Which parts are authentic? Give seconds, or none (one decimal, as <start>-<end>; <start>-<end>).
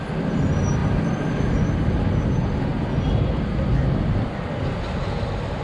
0.0-0.8; 1.5-5.6